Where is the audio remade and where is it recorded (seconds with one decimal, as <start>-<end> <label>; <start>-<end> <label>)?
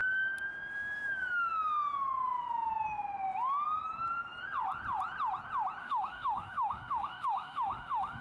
0.0-5.8 recorded; 5.8-8.2 remade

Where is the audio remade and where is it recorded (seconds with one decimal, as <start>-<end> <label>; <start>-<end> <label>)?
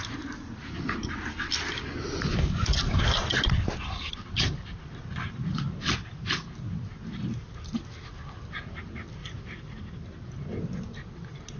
0.0-9.2 recorded; 9.2-9.8 remade; 9.8-11.6 recorded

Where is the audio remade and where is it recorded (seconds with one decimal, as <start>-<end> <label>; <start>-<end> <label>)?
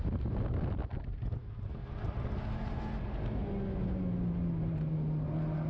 0.0-5.7 recorded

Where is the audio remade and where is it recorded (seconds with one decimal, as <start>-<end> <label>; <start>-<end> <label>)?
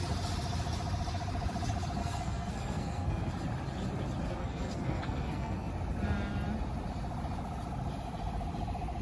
0.0-2.0 recorded; 2.0-3.3 remade; 3.3-4.4 recorded; 4.4-5.7 remade; 5.7-9.0 recorded